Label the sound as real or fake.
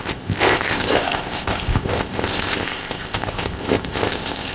fake